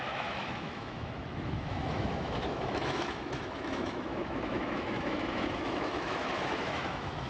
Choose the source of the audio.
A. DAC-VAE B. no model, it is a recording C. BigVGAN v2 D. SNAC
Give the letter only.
A